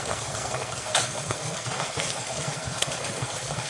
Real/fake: fake